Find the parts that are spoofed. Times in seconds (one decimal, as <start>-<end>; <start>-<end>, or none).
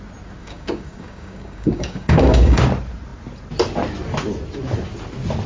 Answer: 0.4-2.6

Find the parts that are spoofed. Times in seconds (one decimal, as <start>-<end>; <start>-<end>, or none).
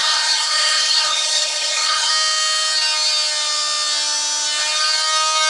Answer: 0.0-2.1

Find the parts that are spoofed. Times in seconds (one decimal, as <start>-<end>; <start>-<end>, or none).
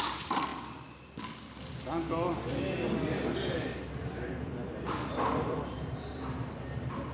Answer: 0.0-0.5; 3.1-7.1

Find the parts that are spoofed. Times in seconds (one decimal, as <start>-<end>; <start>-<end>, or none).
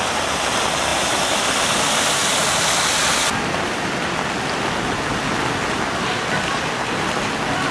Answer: 0.9-1.4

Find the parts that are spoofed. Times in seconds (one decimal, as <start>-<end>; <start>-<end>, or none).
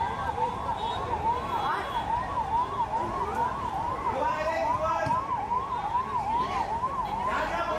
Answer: 3.3-5.4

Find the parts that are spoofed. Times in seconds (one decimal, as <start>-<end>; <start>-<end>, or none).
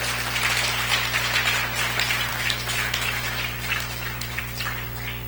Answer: 2.3-4.4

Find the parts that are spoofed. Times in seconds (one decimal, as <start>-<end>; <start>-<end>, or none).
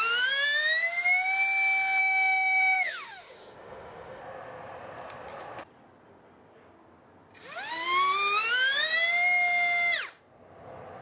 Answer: 2.0-4.2